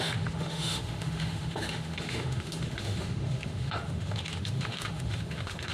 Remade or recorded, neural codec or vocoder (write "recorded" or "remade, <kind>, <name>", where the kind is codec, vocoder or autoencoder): remade, autoencoder, DAC-VAE